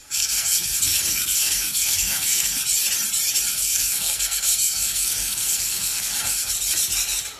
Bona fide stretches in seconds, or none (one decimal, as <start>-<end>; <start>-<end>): 2.6-3.5; 6.5-7.4